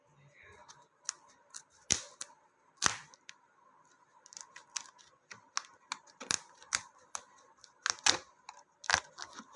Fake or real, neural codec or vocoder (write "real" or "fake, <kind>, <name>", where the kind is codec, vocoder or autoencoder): real